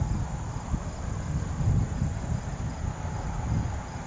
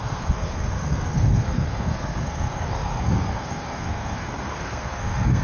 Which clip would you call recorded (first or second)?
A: first